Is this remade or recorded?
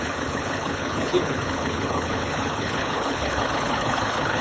remade